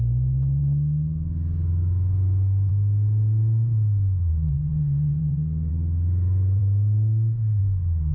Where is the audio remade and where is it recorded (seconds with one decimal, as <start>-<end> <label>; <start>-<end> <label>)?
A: 0.0-4.3 recorded; 4.3-5.7 remade; 5.7-8.1 recorded